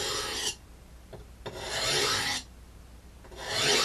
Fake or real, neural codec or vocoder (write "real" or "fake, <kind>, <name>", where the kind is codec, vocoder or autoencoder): real